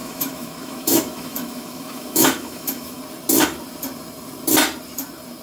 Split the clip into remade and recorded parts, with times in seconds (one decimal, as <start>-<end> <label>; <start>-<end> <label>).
0.0-3.0 remade; 3.0-5.4 recorded